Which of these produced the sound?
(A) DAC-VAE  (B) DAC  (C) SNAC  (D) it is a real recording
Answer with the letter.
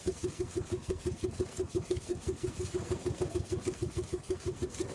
C